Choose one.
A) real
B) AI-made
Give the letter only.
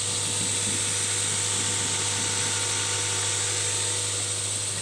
A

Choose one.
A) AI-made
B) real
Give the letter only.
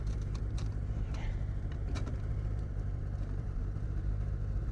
A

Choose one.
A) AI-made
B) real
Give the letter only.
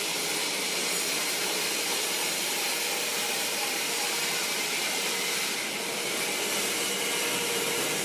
A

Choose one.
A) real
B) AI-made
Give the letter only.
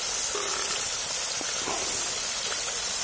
A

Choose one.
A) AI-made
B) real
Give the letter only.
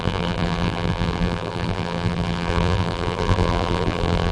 A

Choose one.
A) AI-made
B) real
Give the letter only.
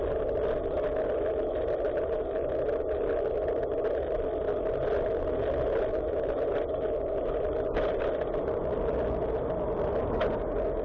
B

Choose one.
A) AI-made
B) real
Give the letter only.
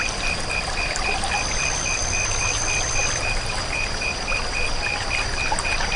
B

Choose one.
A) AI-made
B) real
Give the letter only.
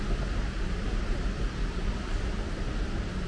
B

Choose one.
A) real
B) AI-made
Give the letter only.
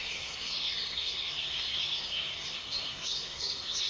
B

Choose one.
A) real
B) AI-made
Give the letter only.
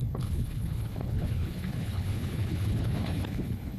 B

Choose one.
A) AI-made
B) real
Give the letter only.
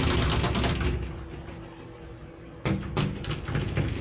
B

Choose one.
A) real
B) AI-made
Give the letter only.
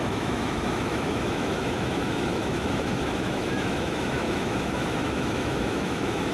B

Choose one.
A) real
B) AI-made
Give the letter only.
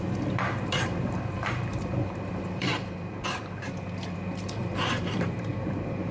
B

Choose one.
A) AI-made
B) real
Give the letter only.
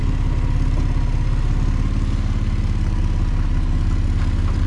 B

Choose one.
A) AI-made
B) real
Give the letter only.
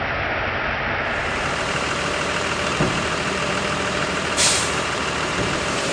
A